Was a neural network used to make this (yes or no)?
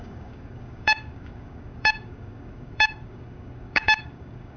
yes